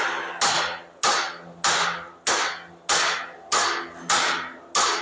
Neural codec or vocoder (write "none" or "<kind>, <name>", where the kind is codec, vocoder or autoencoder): none